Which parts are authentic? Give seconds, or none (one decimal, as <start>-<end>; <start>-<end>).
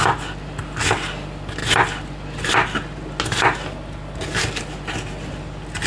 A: 0.0-5.9